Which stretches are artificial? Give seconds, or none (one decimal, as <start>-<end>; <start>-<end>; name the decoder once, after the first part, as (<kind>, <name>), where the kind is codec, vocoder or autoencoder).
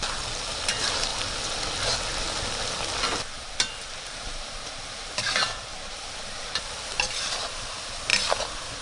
0.0-1.1 (vocoder, BigVGAN v2); 4.0-5.7; 6.4-8.1